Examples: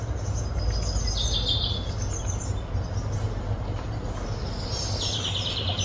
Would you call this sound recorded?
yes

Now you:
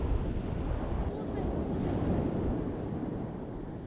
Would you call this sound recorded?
yes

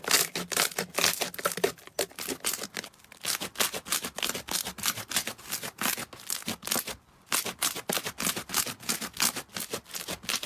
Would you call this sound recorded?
yes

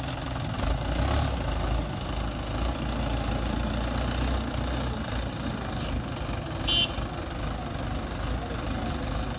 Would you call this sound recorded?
yes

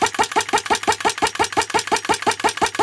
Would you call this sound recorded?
yes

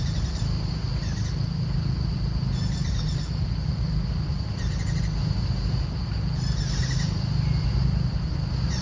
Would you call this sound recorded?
yes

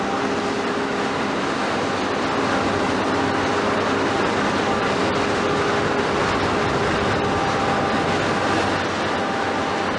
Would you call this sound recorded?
yes